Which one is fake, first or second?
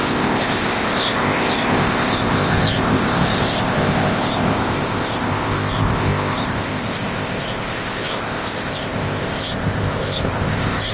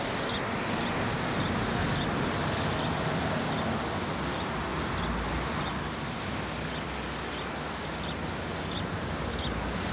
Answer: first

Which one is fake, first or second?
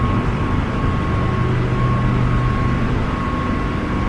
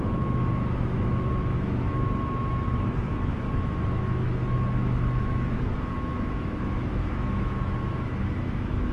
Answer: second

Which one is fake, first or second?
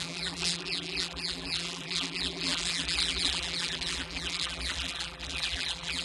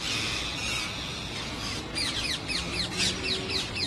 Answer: first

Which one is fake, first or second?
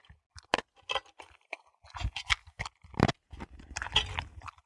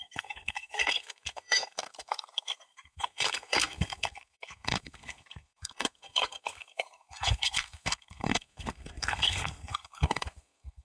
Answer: second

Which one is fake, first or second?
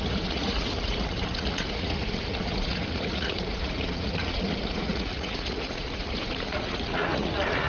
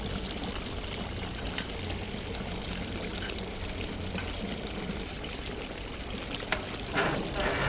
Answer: first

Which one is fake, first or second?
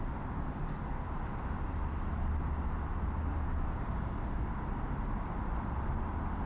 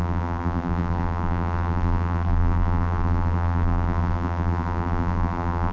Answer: second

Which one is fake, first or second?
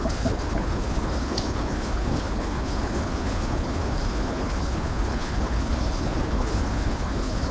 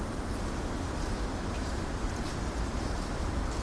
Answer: first